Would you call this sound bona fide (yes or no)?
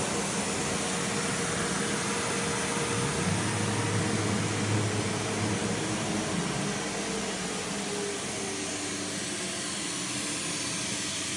yes